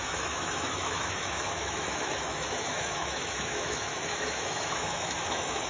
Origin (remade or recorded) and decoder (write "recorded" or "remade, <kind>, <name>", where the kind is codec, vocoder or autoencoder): remade, autoencoder, DAC-VAE